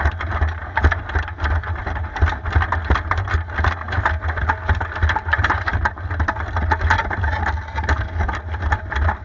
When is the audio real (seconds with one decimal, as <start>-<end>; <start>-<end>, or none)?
0.0-9.2